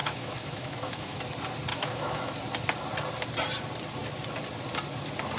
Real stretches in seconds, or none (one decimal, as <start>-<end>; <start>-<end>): 1.2-1.7; 2.3-5.4